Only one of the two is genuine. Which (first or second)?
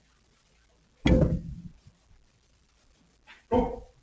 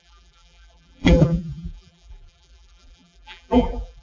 first